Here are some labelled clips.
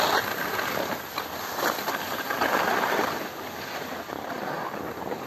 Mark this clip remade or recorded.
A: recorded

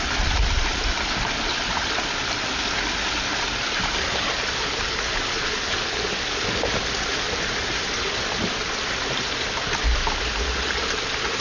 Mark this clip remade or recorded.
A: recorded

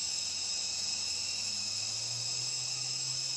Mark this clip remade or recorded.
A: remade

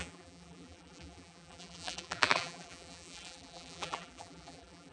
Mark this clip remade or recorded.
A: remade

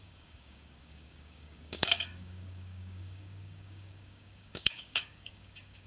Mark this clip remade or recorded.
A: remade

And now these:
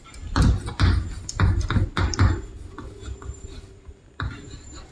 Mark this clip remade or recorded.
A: recorded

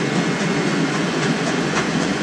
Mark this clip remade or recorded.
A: remade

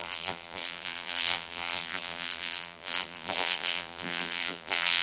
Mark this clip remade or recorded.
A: remade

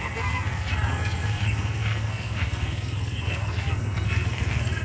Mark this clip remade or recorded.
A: remade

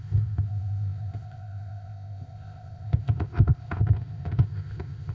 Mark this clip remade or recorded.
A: remade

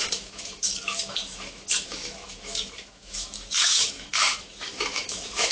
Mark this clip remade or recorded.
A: remade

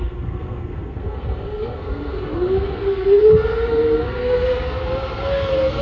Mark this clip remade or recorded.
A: remade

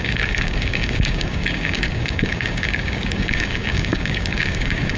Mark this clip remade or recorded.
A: remade